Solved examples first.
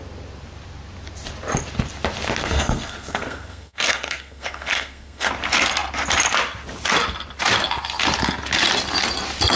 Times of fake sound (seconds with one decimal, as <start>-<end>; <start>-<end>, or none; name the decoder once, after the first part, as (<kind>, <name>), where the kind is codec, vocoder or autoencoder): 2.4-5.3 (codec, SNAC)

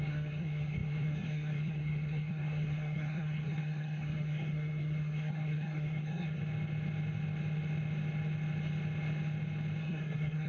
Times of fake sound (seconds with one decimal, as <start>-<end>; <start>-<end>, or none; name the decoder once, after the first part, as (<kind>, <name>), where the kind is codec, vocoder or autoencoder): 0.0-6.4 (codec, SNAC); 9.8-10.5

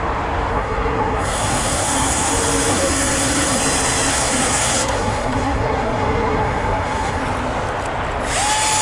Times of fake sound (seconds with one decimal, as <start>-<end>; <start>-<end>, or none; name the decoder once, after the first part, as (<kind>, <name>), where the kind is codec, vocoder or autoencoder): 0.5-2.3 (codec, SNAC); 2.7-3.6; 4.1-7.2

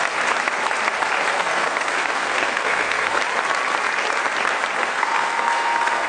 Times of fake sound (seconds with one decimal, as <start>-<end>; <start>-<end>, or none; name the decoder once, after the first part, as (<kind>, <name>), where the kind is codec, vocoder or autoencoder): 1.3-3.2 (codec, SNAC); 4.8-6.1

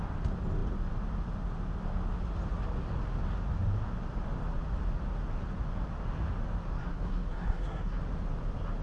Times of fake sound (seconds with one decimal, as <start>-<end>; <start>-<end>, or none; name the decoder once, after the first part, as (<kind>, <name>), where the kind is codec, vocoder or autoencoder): 6.8-8.0 (codec, SNAC)